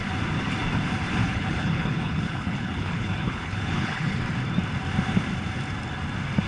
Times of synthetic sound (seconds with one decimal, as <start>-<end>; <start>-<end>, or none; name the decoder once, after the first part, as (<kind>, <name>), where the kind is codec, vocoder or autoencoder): 1.2-4.2 (codec, HILCodec)